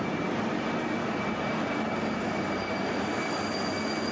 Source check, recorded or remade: recorded